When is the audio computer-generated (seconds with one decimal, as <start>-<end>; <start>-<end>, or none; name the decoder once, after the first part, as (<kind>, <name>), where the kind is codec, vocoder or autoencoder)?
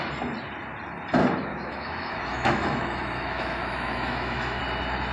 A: 1.5-4.6 (autoencoder, DAC-VAE)